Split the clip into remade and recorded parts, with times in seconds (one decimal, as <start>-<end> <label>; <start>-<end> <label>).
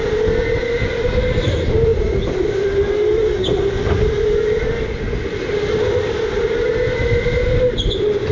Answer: 0.0-8.3 recorded